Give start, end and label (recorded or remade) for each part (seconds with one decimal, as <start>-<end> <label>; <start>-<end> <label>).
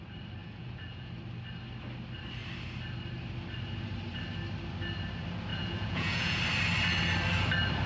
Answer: 0.0-0.4 recorded; 0.4-1.1 remade; 1.1-5.5 recorded; 5.5-6.4 remade; 6.4-7.9 recorded